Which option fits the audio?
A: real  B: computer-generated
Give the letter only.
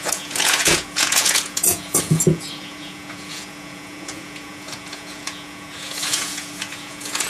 B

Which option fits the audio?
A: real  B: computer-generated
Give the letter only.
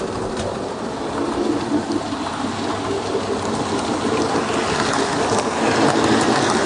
A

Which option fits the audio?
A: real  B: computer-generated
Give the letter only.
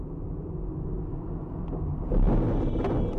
A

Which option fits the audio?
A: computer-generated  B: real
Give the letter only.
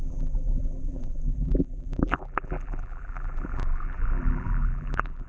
A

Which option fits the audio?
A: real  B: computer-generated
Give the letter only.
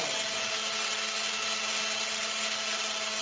A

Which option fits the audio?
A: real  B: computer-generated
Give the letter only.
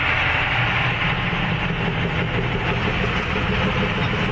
A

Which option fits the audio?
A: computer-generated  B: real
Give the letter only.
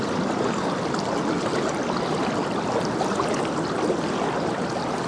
B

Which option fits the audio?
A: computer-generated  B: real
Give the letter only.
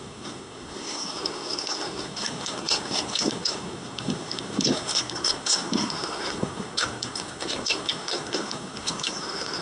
A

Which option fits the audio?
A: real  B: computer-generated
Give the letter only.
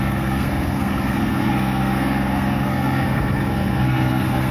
B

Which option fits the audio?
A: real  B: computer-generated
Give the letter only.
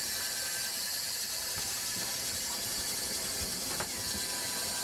B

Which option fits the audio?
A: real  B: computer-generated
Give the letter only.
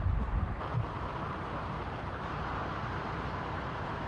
B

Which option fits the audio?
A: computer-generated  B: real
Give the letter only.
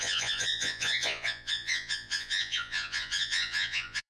A